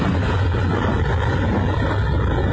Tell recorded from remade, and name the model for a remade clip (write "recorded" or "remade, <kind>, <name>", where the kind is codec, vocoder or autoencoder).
recorded